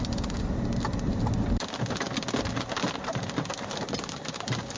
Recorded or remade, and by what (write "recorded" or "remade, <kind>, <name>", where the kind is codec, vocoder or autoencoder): recorded